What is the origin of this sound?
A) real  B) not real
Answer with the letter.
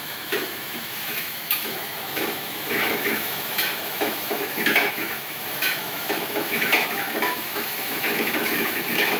B